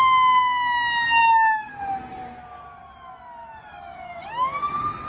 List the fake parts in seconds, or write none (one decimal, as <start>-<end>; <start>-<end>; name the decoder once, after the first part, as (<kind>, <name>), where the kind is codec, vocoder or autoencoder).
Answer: 1.2-1.9 (autoencoder, DAC-VAE); 3.4-4.6